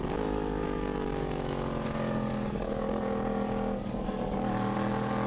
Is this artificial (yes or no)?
yes